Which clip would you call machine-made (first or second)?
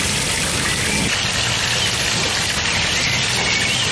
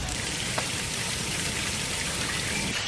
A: second